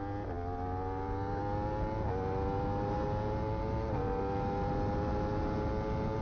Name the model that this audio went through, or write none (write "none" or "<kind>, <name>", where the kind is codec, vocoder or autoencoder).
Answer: none